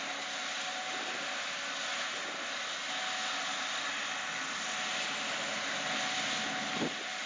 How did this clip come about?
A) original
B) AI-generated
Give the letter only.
A